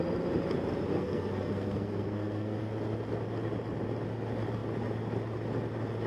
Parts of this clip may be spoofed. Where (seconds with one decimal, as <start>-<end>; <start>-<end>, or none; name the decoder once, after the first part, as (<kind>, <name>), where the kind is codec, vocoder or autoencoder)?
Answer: 0.9-2.6 (codec, SNAC)